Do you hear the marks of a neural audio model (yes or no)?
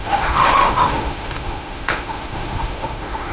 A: yes